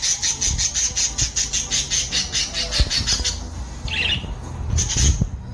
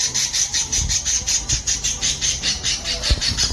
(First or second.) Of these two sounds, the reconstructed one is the second